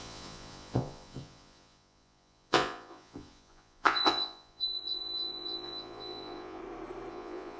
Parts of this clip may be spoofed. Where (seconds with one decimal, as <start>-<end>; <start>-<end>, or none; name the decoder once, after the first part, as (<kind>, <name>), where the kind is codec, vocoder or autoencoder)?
0.0-6.6 (vocoder, Vocos); 7.1-7.6